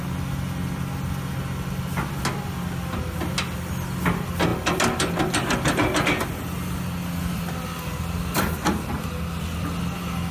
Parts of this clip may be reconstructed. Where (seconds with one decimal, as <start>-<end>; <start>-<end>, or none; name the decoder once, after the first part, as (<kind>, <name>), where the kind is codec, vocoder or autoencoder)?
none